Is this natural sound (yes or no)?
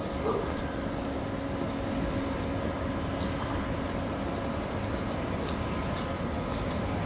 yes